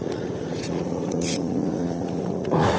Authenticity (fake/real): fake